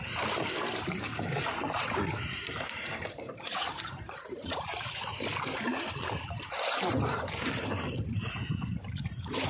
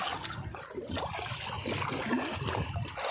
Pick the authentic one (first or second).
second